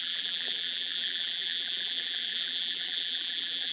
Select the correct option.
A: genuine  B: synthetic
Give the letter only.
B